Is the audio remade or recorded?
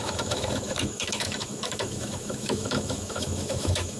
remade